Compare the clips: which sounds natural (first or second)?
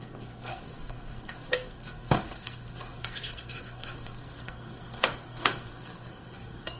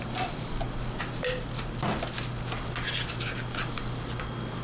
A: second